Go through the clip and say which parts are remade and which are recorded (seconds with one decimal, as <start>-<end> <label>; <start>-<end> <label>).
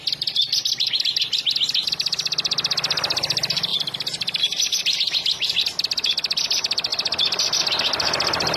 0.0-8.6 recorded